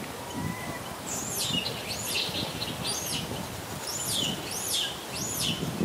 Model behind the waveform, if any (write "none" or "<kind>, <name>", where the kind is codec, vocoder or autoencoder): none